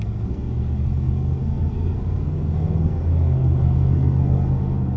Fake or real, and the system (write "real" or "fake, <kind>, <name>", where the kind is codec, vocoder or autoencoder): fake, codec, SNAC